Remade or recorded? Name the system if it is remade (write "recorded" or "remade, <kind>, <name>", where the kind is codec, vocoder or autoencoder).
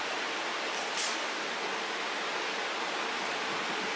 recorded